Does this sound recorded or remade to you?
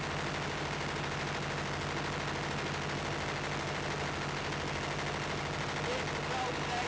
recorded